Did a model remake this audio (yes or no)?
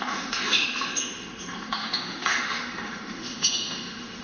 yes